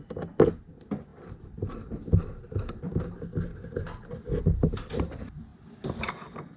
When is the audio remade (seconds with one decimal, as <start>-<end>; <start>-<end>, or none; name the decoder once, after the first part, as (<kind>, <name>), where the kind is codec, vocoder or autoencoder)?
none